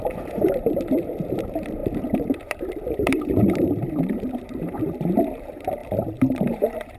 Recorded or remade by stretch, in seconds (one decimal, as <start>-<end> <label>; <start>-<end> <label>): 0.0-7.0 remade